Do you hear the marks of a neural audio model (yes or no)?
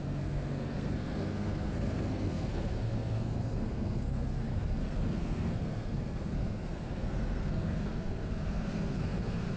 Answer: yes